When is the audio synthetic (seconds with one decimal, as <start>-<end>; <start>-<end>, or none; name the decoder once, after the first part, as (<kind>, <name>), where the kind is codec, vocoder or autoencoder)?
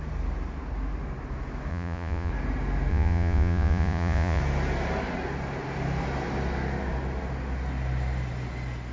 1.7-2.3 (vocoder, Vocos); 2.9-4.4